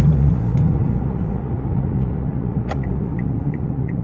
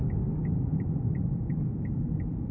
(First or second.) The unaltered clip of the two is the second